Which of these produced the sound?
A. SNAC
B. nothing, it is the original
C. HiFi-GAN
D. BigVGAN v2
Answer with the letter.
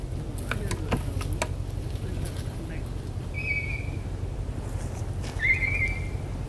B